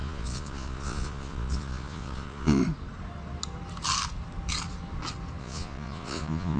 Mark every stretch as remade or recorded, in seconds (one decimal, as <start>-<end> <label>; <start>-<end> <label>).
0.0-2.6 remade; 2.6-5.4 recorded; 5.4-6.6 remade

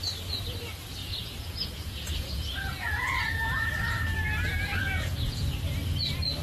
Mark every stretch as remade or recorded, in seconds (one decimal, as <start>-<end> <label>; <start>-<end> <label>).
0.0-1.0 recorded; 1.0-3.6 remade; 3.6-4.7 recorded; 4.7-5.6 remade; 5.6-6.4 recorded

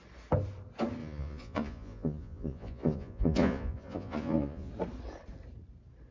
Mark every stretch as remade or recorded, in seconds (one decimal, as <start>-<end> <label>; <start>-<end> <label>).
0.0-1.0 recorded; 1.0-4.7 remade; 4.7-6.1 recorded

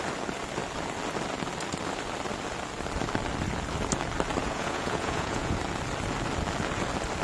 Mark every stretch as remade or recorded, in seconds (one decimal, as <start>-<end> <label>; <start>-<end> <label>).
0.0-4.4 recorded; 4.4-5.6 remade; 5.6-7.2 recorded

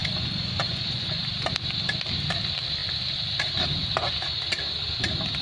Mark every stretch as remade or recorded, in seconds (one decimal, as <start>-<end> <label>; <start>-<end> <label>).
0.0-1.2 remade; 1.2-5.4 recorded